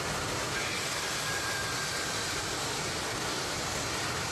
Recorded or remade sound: recorded